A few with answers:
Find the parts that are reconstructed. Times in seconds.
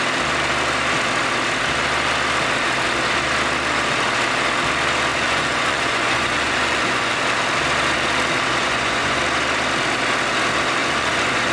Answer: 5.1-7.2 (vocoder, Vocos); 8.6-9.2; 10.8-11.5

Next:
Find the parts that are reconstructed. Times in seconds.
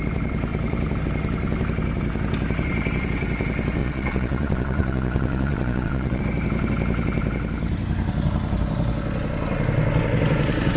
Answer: 3.8-6.2 (vocoder, Vocos)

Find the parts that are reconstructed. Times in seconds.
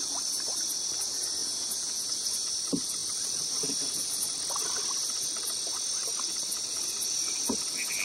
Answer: 1.4-2.3 (vocoder, Vocos)